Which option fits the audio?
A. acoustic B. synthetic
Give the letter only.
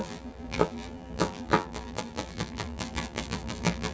B